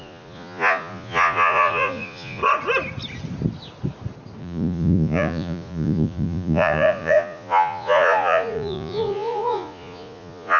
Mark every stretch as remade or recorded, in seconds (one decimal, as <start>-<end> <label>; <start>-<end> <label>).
0.0-2.4 remade; 2.4-4.4 recorded; 4.4-10.6 remade